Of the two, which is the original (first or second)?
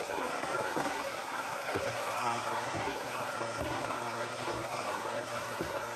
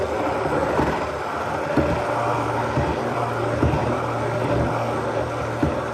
second